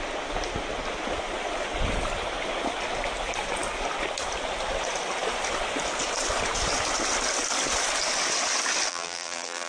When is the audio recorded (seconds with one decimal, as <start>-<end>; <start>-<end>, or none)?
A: 0.0-8.9